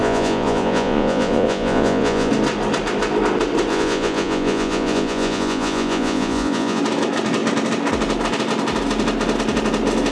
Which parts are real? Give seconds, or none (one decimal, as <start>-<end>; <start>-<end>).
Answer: 2.3-3.7; 6.8-10.1